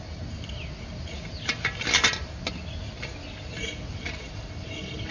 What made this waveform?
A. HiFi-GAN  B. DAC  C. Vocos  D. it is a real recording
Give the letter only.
D